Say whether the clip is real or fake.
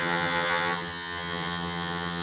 fake